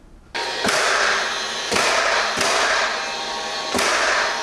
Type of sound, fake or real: real